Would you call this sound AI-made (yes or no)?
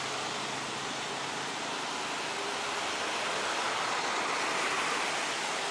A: no